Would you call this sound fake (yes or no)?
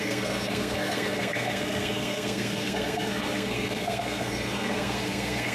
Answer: yes